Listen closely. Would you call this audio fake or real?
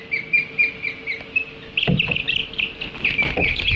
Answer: real